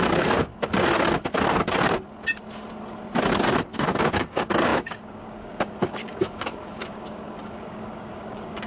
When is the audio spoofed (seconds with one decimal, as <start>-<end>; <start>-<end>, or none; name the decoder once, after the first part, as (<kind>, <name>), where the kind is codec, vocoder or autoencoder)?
0.0-0.5 (codec, DAC); 3.7-8.7

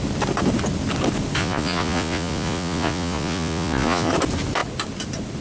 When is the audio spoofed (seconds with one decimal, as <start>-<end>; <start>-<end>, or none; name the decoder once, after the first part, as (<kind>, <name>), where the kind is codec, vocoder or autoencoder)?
1.4-4.1 (vocoder, Vocos)